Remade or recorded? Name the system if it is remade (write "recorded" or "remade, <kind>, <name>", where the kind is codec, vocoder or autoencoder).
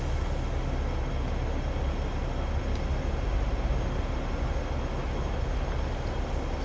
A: recorded